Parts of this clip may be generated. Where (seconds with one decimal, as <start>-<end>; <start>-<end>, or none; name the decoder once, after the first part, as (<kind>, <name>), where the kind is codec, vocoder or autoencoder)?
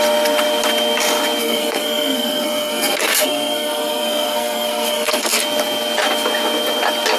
1.4-5.4 (codec, SNAC)